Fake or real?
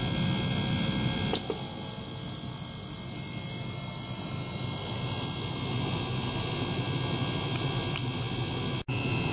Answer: real